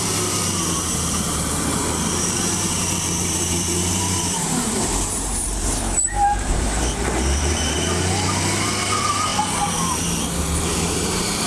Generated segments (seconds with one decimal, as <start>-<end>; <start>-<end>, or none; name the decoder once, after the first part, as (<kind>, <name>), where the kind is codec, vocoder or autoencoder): 0.0-9.3 (vocoder, BigVGAN v2); 10.4-11.5